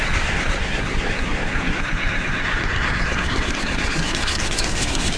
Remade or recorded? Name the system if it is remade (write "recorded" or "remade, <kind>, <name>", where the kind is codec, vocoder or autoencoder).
remade, codec, SNAC